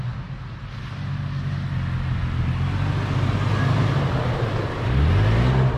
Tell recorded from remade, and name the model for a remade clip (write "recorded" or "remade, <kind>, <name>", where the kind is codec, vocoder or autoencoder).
recorded